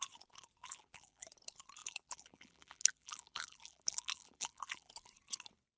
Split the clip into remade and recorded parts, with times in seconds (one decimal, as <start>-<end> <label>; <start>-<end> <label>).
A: 0.0-0.6 recorded; 0.6-1.3 remade; 1.3-1.8 recorded; 1.8-4.9 remade; 4.9-5.8 recorded